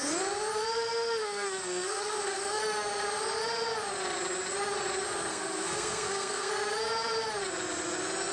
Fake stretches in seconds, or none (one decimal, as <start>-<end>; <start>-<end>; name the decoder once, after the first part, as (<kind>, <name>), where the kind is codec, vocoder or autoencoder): 1.2-2.6 (codec, SNAC); 5.3-6.5